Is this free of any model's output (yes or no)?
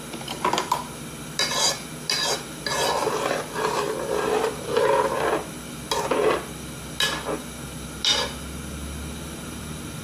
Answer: yes